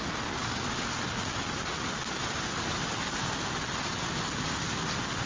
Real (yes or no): yes